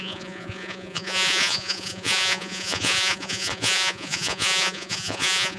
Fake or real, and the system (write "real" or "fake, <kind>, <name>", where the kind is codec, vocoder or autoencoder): fake, vocoder, Vocos